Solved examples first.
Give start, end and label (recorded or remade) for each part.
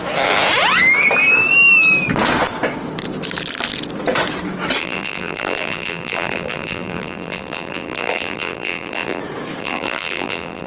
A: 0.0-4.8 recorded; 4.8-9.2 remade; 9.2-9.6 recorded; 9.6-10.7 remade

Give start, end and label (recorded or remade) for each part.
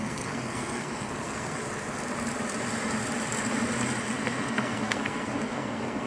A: 0.0-1.6 remade; 1.6-4.1 recorded; 4.1-6.1 remade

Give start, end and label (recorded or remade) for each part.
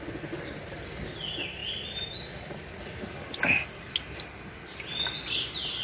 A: 0.0-5.8 recorded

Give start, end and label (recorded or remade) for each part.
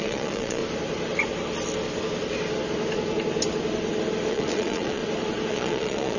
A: 0.0-0.6 remade; 0.6-4.3 recorded; 4.3-5.0 remade; 5.0-5.5 recorded; 5.5-6.2 remade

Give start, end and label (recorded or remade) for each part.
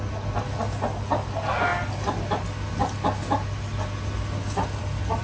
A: 0.0-5.2 recorded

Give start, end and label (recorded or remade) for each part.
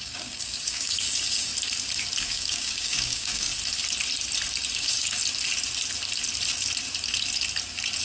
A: 0.0-1.5 remade; 1.5-2.2 recorded; 2.2-3.5 remade; 3.5-4.7 recorded; 4.7-5.2 remade; 5.2-8.0 recorded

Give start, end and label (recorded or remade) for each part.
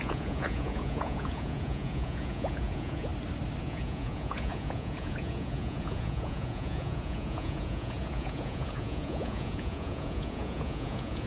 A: 0.0-3.1 remade; 3.1-3.6 recorded; 3.6-11.3 remade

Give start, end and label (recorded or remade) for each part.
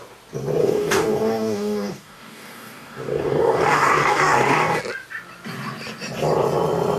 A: 0.0-0.6 recorded; 0.6-4.8 remade; 4.8-7.0 recorded